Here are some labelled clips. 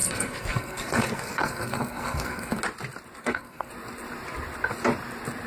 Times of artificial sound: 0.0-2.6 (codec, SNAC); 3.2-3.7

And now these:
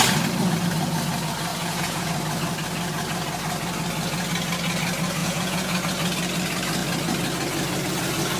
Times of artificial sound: 1.5-2.1 (vocoder, Vocos); 5.2-5.8